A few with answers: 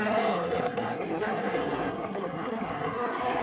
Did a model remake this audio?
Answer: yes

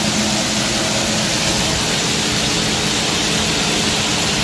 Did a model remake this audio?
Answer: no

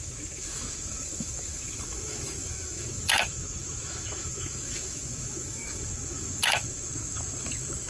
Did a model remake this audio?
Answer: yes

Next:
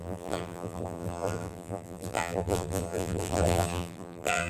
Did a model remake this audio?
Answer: yes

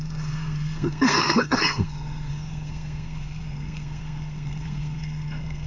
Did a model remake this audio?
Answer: yes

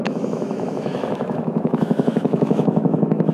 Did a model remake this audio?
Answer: yes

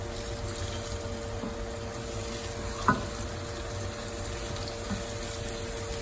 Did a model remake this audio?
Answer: no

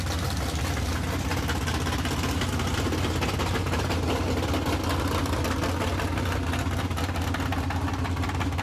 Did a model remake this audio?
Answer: no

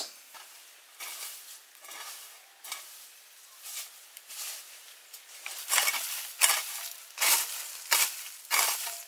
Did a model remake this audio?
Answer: no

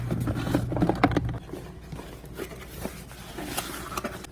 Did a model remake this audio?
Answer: no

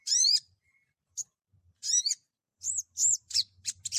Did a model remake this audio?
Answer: yes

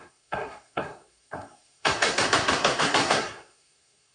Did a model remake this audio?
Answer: yes